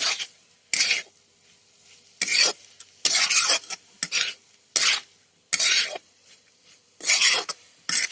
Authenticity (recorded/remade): recorded